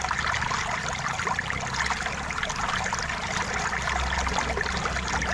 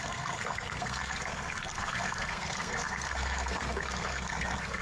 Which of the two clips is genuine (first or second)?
first